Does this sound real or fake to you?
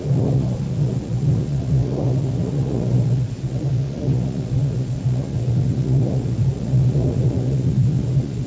fake